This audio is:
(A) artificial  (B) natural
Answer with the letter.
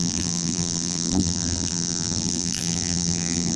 A